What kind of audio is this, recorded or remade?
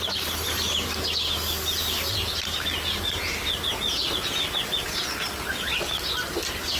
recorded